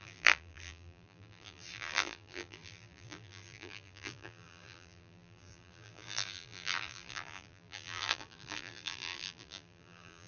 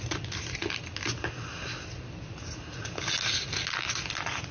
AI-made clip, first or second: first